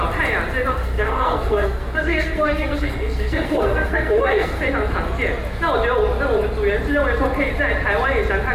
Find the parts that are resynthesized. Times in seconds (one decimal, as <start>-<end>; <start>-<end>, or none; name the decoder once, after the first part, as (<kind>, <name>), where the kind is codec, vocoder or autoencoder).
0.7-4.6 (codec, SNAC)